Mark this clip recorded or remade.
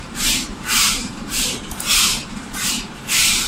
remade